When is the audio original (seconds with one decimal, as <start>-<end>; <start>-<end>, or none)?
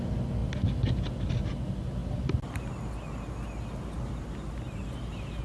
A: 0.0-5.4